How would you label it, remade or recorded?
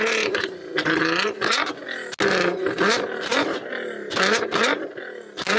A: recorded